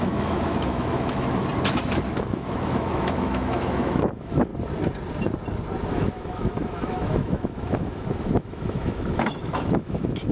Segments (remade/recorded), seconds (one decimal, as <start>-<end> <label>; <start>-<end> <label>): 0.0-1.5 remade; 1.5-2.1 recorded; 2.1-4.5 remade; 4.5-5.9 recorded; 5.9-10.3 remade